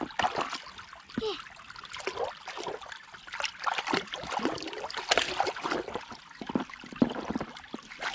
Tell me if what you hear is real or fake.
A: real